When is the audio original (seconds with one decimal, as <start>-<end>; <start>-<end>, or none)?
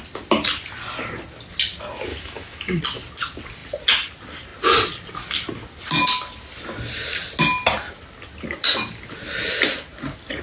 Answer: 0.0-2.1; 2.8-10.4